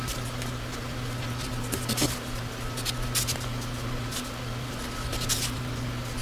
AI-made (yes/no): no